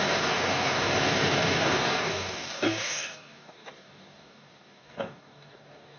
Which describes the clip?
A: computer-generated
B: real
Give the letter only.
A